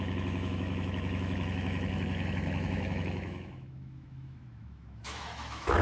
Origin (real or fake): fake